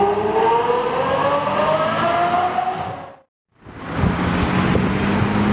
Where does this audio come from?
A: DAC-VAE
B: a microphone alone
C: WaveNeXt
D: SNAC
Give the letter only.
B